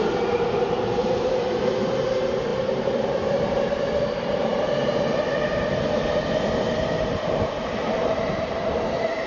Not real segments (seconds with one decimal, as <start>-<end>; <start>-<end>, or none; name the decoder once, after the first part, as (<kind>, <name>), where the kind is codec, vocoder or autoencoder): 0.0-9.3 (vocoder, BigVGAN v2)